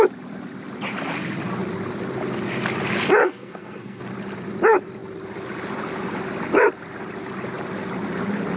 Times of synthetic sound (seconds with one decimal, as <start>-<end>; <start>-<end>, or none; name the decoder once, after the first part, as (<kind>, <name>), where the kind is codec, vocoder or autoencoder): 3.2-4.0 (codec, SNAC)